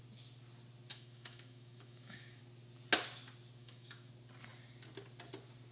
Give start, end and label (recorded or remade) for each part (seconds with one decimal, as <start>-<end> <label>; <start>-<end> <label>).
0.0-0.9 recorded; 0.9-2.4 remade; 2.4-3.6 recorded; 3.6-4.1 remade; 4.1-5.7 recorded